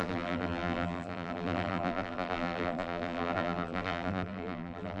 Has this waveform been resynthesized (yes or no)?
yes